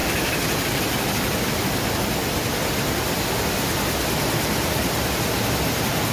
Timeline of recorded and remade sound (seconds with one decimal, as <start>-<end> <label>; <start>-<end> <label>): 0.0-6.1 recorded